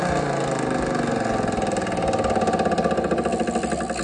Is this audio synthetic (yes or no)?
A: no